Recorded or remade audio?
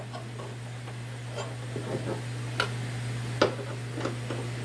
recorded